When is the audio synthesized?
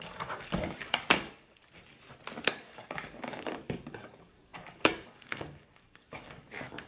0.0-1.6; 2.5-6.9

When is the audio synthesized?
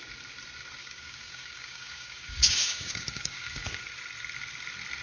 0.8-3.8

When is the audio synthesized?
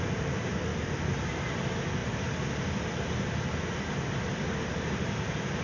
none